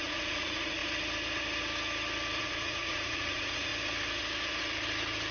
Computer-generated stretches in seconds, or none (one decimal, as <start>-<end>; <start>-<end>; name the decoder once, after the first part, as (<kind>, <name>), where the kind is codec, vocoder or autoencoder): 0.0-0.8 (vocoder, Vocos); 2.4-3.7

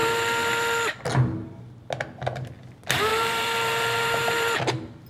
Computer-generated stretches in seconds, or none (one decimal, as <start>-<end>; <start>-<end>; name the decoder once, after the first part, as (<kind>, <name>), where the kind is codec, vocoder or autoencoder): 3.1-4.6 (vocoder, BigVGAN v2)

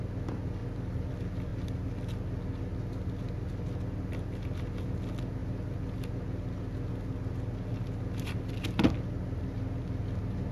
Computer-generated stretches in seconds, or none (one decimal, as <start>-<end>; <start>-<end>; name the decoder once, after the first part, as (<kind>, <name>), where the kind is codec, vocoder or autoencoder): none

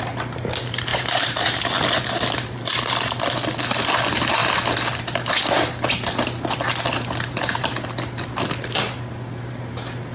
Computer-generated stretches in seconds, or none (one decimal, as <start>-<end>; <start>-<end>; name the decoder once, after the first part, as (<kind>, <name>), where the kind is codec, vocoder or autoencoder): 0.9-1.6 (vocoder, BigVGAN v2)

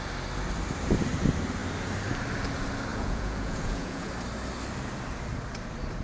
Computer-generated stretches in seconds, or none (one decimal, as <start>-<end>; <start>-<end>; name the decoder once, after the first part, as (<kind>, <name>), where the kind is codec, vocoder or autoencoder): 2.9-4.1 (vocoder, Vocos)